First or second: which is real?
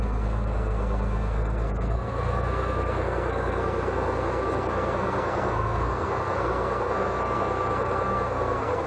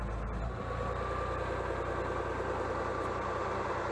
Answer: second